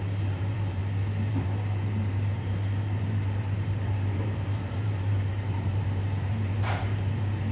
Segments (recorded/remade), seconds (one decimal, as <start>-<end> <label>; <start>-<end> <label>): 0.0-0.8 remade; 0.8-1.3 recorded; 1.3-7.5 remade